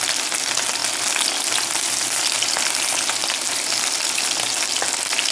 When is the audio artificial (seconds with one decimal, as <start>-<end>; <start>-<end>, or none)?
none